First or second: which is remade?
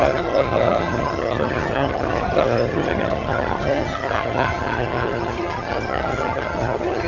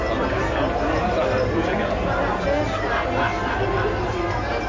first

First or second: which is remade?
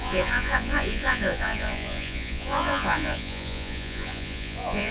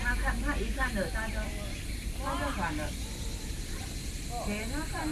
first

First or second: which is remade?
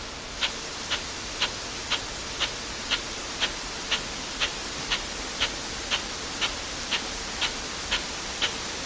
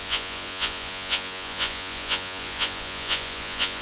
second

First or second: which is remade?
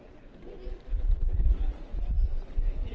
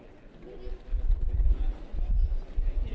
first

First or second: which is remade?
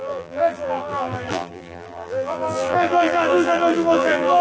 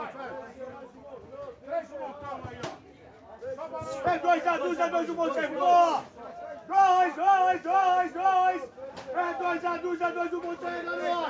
first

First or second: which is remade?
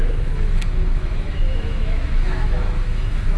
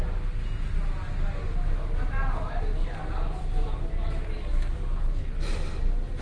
first